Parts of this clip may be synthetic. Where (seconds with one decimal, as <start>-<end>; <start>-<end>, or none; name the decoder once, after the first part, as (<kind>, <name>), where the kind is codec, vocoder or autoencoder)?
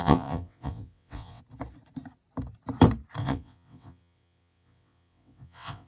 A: 0.0-1.4 (vocoder, WaveNeXt); 3.2-5.9